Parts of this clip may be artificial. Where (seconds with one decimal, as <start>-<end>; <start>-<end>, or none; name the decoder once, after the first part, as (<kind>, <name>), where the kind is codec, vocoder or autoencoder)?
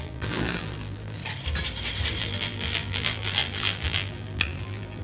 0.0-1.2 (vocoder, BigVGAN v2); 2.2-5.0